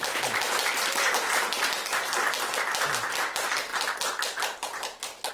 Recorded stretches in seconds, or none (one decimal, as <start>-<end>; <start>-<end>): 0.0-5.3